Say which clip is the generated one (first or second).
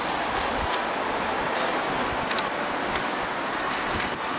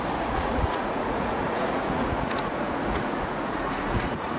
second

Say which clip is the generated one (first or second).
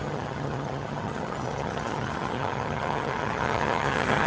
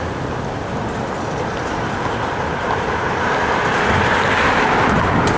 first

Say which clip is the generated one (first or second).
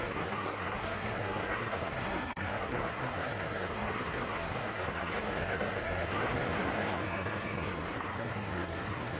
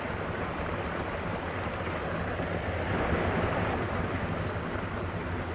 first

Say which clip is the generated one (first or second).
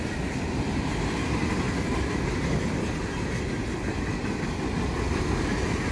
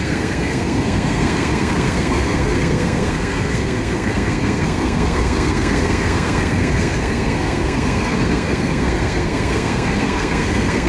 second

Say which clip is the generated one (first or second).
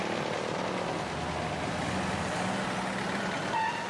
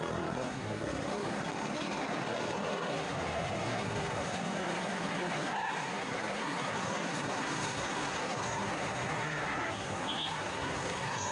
second